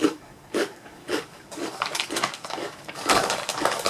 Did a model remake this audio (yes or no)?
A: yes